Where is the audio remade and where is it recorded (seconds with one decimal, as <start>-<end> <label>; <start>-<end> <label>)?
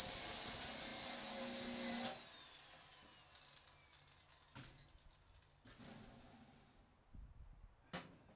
0.0-8.4 recorded